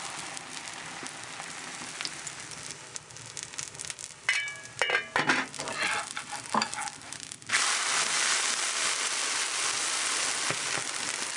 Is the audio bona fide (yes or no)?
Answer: yes